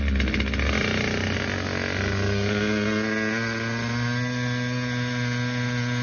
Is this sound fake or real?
real